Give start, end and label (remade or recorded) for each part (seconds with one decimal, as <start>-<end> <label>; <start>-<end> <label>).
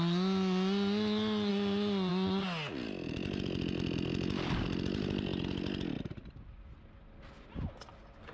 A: 0.0-8.3 recorded